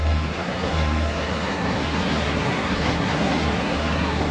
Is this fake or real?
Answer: fake